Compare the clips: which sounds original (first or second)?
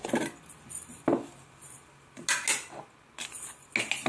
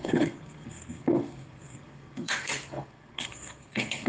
first